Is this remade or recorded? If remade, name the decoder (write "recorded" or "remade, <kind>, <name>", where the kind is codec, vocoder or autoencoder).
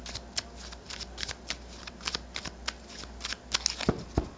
recorded